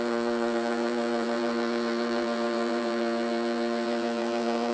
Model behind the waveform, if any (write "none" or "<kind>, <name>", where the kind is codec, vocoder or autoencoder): vocoder, BigVGAN v2